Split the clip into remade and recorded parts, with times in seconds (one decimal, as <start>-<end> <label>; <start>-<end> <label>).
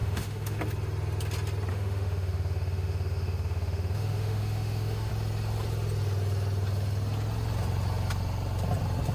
0.0-0.6 remade; 0.6-1.7 recorded; 1.7-5.1 remade; 5.1-9.1 recorded